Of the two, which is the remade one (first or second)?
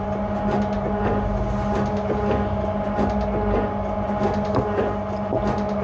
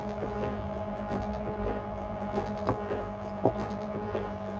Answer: second